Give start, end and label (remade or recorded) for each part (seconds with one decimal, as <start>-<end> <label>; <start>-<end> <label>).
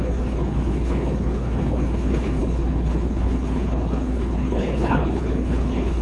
0.0-6.0 remade